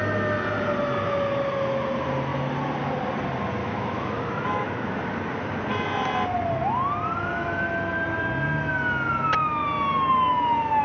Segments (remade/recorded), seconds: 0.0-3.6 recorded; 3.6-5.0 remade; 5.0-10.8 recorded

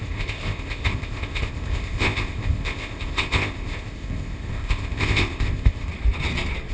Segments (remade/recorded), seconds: 0.0-5.9 remade; 5.9-6.7 recorded

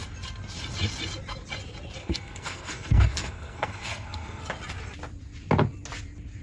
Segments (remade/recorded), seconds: 0.0-2.0 recorded; 2.0-4.4 remade; 4.4-6.4 recorded